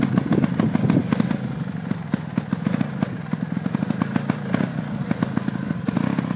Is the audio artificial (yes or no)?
no